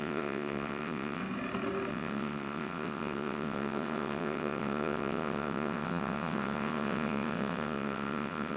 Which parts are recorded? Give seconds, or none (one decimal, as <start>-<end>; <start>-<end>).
1.2-1.9